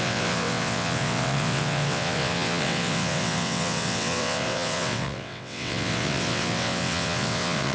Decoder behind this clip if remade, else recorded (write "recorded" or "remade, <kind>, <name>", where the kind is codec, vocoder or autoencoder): remade, vocoder, WaveNeXt